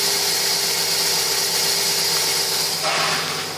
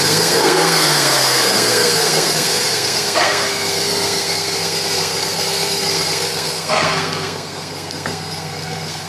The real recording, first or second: first